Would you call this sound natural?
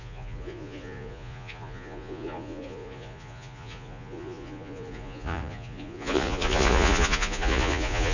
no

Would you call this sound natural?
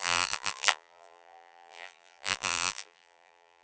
no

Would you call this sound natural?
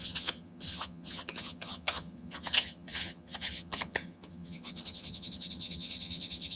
no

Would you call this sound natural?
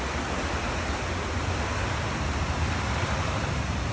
yes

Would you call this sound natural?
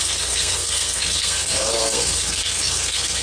no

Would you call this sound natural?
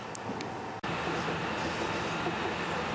yes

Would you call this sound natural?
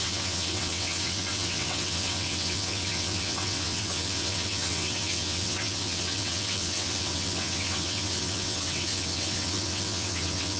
no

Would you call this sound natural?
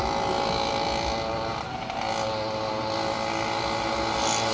yes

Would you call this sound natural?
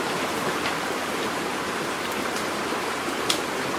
no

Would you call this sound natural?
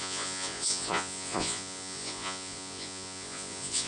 no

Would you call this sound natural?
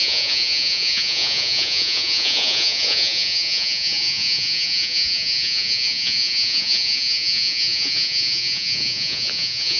no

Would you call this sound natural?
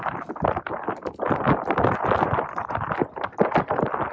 no